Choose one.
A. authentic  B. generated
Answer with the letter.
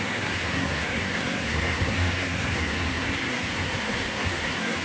B